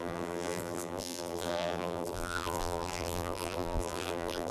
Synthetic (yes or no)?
yes